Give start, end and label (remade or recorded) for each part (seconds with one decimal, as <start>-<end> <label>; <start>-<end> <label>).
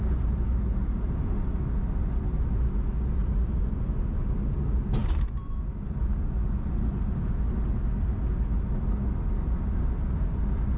0.0-10.8 recorded